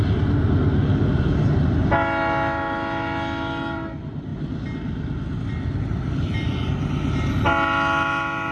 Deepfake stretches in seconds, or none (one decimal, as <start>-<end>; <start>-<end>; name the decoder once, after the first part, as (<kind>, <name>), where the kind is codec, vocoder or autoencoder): none